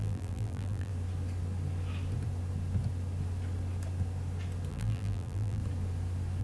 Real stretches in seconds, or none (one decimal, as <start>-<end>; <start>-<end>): 0.9-4.7; 5.6-6.4